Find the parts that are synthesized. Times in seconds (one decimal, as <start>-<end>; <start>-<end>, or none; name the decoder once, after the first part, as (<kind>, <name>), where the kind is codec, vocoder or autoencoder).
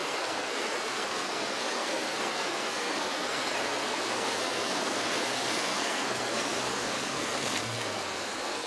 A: 0.0-8.7 (codec, SNAC)